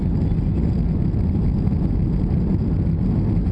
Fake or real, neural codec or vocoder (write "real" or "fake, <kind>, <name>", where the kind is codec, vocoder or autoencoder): real